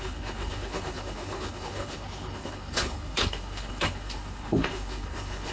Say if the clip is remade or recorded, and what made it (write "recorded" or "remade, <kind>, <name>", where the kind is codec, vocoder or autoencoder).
remade, codec, HILCodec